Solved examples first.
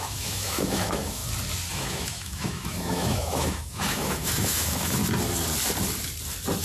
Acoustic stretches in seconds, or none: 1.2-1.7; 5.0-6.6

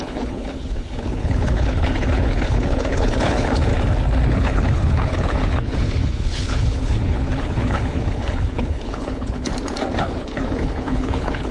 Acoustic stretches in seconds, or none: 3.7-4.3; 9.5-10.0

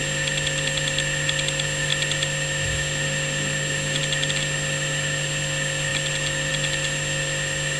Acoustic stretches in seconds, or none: 0.0-7.8